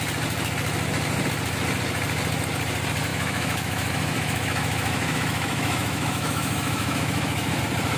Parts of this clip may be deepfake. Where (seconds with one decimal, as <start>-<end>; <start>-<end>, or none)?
3.1-7.6